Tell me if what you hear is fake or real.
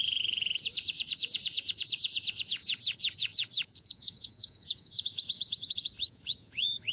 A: fake